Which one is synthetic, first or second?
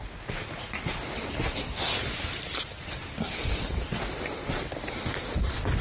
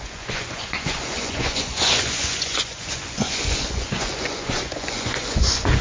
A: second